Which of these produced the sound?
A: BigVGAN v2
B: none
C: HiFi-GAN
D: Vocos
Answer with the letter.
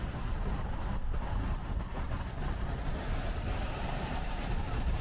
A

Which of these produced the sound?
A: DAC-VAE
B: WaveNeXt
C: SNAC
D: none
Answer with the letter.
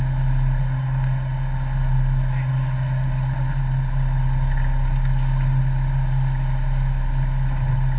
D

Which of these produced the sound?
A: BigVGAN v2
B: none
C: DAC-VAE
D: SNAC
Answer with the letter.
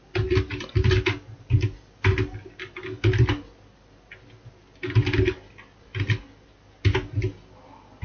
B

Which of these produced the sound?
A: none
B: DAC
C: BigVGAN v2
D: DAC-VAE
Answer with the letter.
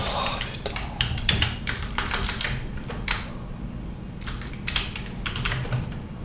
C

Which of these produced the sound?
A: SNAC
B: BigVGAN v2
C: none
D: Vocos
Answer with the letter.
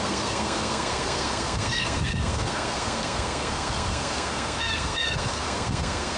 A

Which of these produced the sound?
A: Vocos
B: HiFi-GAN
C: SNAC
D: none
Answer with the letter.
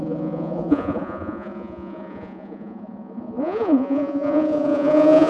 A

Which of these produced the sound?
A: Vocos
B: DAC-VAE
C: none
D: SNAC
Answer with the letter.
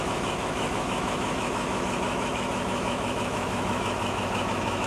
B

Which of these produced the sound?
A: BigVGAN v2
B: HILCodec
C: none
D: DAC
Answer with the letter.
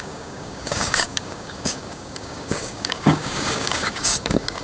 D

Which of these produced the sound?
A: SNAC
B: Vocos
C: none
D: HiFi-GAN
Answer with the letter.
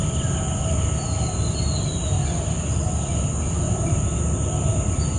C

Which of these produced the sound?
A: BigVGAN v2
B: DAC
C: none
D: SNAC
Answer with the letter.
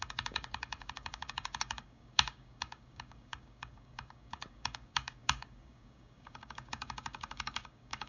B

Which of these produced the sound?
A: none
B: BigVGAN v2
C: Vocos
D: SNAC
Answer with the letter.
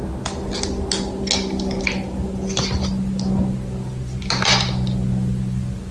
A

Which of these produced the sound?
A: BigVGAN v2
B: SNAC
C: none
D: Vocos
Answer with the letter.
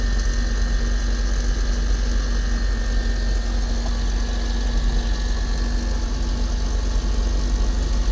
C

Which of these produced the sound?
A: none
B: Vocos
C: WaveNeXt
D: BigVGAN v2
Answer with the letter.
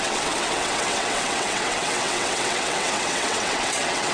C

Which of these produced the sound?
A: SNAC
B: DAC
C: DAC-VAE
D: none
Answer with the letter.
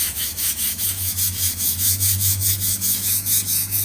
C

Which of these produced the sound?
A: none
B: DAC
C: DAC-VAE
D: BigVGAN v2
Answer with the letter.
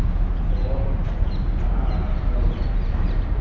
D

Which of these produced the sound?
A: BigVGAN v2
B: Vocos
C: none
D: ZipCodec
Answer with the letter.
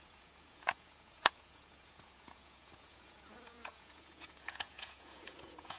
B